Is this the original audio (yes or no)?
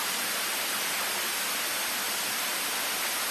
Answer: yes